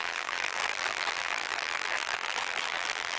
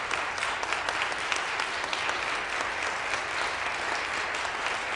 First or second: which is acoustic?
second